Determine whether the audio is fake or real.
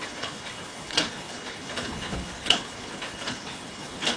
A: fake